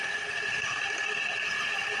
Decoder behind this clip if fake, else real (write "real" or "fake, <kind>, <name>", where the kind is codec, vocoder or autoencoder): real